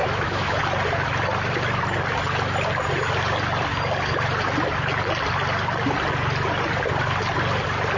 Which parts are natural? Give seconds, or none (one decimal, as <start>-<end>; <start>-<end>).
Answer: 0.6-8.0